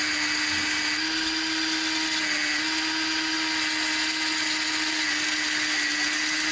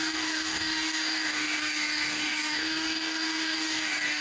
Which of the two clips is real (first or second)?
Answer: first